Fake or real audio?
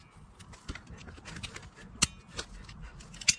real